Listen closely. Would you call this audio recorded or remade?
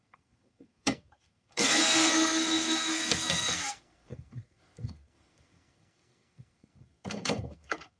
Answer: remade